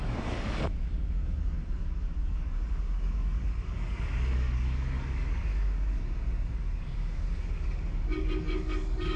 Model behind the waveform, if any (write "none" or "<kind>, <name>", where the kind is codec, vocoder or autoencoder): codec, DAC